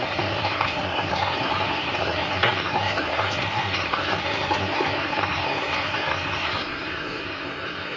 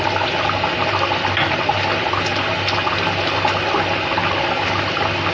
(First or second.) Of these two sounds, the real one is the second